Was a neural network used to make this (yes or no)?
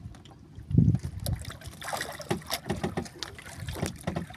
no